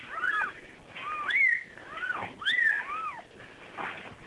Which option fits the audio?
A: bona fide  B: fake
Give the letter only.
A